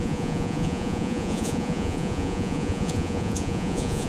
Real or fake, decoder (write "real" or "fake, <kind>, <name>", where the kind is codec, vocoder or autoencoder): fake, vocoder, Vocos